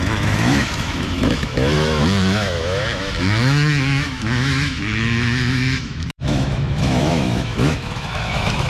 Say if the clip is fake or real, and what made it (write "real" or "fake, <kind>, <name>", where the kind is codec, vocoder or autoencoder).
fake, autoencoder, DAC-VAE